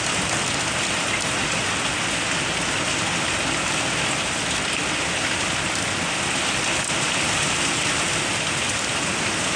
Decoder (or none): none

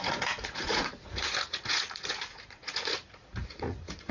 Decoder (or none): vocoder, Vocos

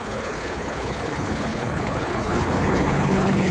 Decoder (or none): codec, HILCodec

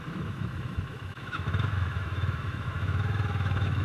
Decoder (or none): autoencoder, DAC-VAE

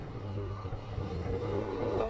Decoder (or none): codec, SNAC